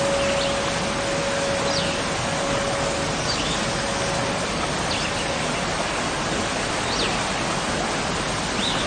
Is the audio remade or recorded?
recorded